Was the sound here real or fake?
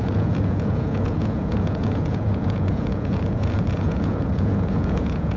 fake